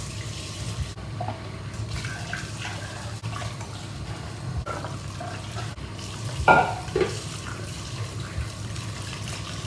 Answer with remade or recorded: recorded